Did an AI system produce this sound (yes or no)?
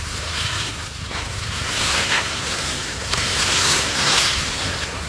yes